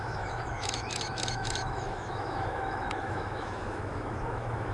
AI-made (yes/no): yes